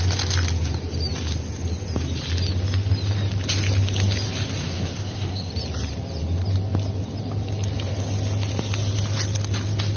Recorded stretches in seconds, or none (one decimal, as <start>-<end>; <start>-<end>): 0.0-4.6; 5.5-10.0